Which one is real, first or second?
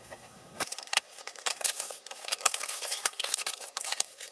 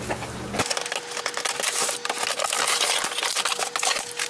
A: second